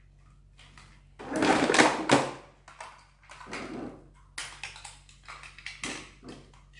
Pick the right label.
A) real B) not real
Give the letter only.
A